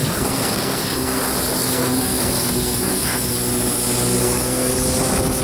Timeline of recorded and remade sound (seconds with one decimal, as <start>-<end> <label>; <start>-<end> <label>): 0.0-1.2 remade; 1.2-1.6 recorded; 1.6-3.3 remade; 3.3-4.2 recorded; 4.2-4.7 remade; 4.7-5.4 recorded